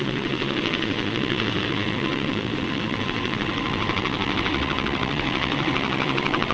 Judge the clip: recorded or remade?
remade